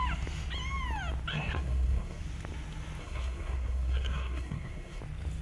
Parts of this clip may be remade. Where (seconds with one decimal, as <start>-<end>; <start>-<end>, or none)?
1.3-2.2; 3.0-5.0